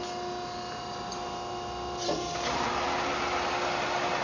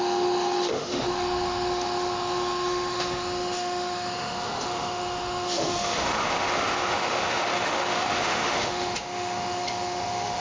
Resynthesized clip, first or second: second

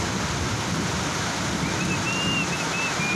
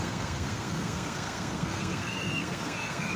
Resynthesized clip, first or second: second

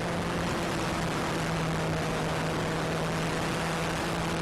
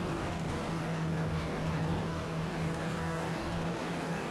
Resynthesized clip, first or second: second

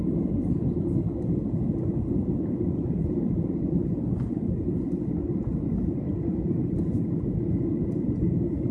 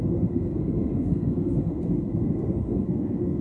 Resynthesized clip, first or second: second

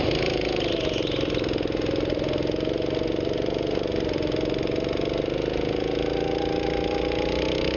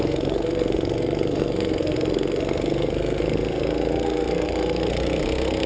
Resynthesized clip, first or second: second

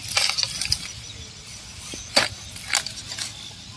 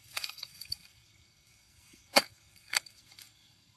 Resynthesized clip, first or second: second